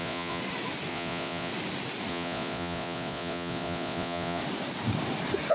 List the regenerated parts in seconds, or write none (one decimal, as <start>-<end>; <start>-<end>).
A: 0.0-0.4; 0.9-1.5; 2.1-4.4